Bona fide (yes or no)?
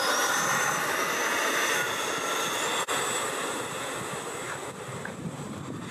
yes